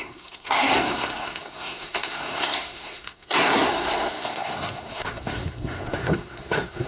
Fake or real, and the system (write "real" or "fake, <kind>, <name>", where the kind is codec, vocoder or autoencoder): fake, codec, SNAC